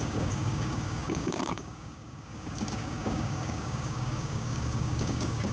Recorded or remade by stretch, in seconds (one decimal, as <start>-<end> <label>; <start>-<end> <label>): 0.0-5.5 remade